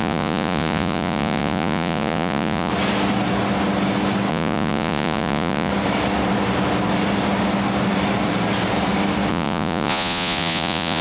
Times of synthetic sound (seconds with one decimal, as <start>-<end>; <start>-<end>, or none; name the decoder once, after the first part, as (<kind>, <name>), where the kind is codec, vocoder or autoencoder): 0.0-2.7 (vocoder, Vocos); 4.3-5.7; 9.3-11.0